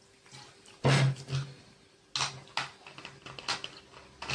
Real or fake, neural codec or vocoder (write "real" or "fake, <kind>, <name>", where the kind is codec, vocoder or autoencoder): real